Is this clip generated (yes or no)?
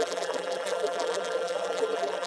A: yes